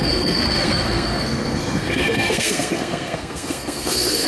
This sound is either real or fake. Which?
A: fake